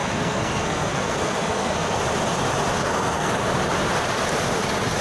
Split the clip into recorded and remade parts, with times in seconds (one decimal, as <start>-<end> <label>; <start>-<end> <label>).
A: 0.0-2.0 remade; 2.0-2.8 recorded; 2.8-3.3 remade; 3.3-5.0 recorded